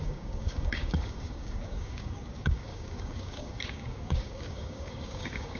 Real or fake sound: fake